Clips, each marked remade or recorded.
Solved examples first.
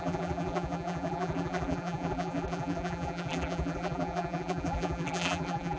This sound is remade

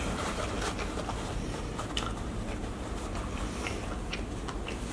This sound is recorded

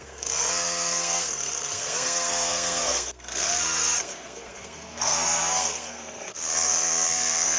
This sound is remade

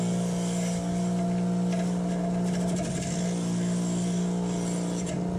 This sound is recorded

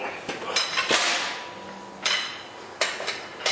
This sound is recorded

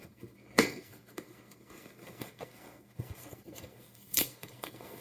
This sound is remade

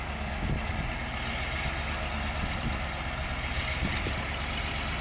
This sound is recorded